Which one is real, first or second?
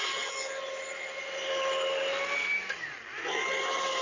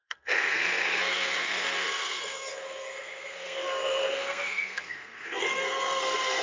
first